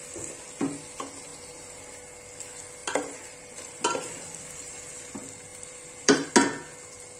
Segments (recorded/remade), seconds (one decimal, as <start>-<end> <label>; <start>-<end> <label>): 0.0-2.8 recorded; 2.8-4.8 remade; 4.8-5.5 recorded; 5.5-6.3 remade; 6.3-7.2 recorded